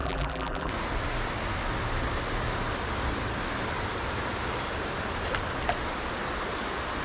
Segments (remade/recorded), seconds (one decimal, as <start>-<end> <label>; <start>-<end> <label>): 0.0-0.7 remade; 0.7-7.0 recorded